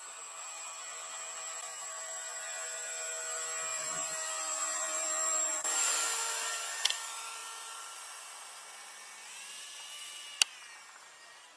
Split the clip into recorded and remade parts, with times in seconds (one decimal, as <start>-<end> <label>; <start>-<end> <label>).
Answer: 0.0-3.7 recorded; 3.7-5.9 remade; 5.9-11.6 recorded